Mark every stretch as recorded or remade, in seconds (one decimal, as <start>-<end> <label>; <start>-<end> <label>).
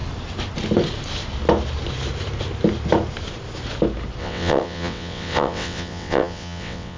0.0-4.2 recorded; 4.2-7.0 remade